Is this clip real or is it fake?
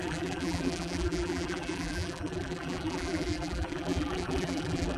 fake